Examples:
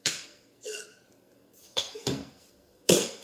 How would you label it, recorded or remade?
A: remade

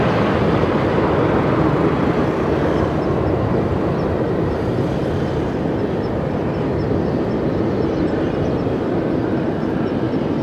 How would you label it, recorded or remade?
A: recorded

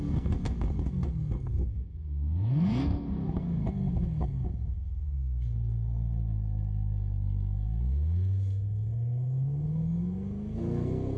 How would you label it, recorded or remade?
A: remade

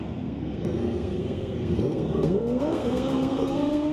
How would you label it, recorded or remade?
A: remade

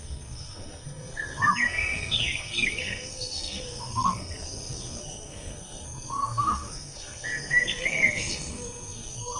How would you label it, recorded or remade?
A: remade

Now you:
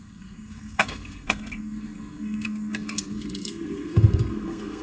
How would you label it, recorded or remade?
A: remade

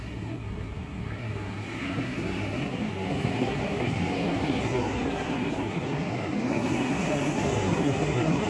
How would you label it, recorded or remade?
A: remade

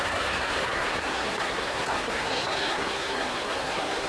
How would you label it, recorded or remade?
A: remade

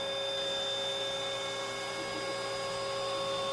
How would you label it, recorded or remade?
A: recorded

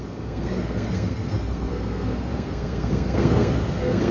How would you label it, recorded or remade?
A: remade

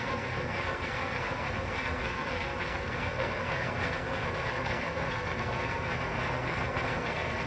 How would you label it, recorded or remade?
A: remade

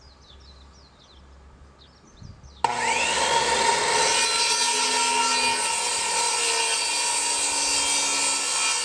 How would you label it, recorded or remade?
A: recorded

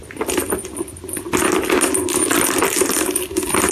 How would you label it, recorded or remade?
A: recorded